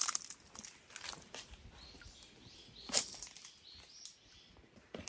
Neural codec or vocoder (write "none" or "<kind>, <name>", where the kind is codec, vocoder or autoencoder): none